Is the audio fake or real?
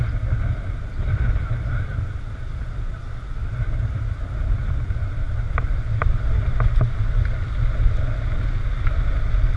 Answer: real